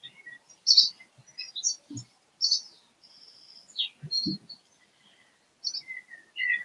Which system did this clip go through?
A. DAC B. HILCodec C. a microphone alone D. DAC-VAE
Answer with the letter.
C